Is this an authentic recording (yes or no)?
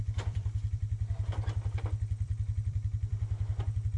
no